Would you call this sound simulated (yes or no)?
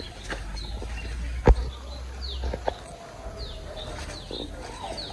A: no